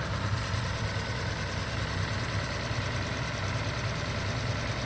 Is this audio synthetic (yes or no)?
no